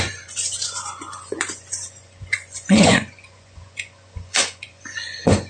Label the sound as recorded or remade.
remade